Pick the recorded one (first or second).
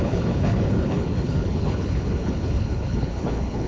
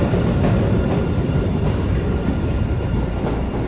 second